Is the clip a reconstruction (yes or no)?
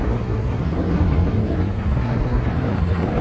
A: yes